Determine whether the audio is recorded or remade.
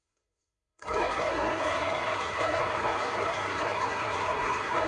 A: remade